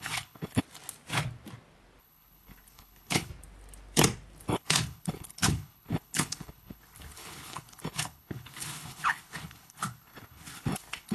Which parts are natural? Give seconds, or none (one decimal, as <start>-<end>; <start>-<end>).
0.6-2.0; 3.3-4.5